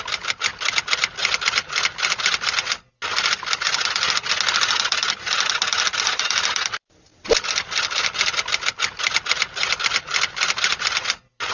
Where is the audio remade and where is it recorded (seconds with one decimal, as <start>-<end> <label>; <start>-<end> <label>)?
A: 0.0-11.5 recorded